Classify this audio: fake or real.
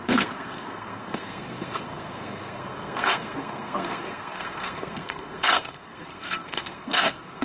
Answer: fake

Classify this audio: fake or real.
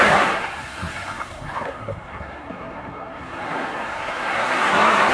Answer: fake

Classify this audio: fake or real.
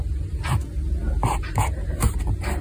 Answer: real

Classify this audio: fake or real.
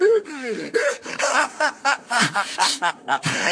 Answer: fake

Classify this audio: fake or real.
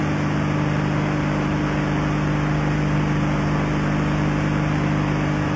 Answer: real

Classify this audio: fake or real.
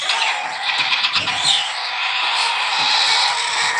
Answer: real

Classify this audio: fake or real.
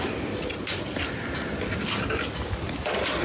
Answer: real